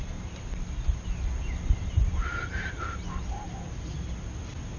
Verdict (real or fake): real